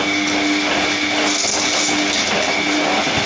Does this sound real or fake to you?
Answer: real